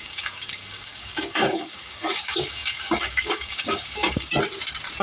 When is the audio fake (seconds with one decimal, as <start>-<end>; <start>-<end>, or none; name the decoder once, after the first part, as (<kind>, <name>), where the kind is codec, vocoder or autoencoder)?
0.0-4.3 (codec, DAC)